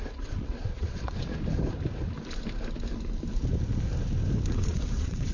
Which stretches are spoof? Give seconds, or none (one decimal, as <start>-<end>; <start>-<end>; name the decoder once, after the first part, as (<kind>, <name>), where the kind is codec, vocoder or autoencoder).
0.0-1.3 (vocoder, WaveNeXt); 4.5-5.3